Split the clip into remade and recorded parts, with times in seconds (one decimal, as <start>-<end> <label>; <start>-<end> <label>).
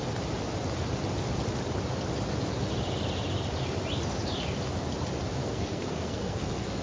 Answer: 0.0-5.4 recorded; 5.4-6.8 remade